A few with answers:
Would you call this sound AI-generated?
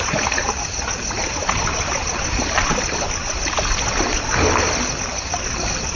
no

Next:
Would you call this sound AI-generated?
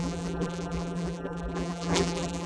yes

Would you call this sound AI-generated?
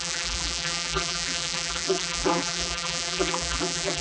yes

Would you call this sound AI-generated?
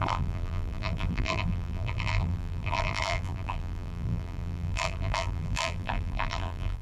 yes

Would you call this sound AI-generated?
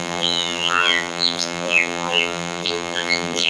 yes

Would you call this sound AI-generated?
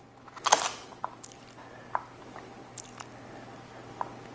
no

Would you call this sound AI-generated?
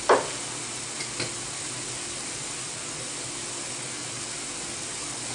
no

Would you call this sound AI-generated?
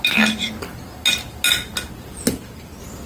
no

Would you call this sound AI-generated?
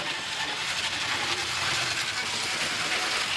no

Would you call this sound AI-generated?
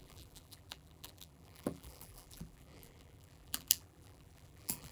yes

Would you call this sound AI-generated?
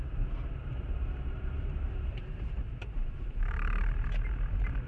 yes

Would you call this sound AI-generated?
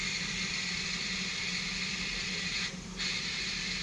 no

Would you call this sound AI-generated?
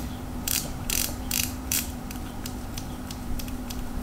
yes